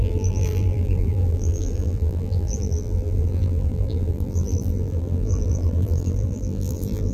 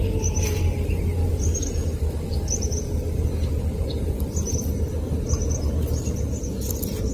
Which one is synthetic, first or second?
first